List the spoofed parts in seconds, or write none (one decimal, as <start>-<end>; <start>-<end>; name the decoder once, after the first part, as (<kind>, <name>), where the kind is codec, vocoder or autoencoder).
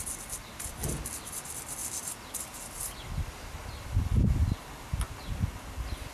none